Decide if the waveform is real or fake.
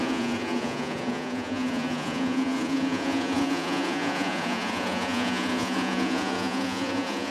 fake